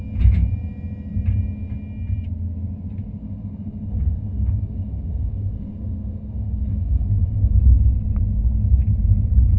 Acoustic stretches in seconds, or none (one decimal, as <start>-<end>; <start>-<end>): 0.0-3.2; 7.6-9.6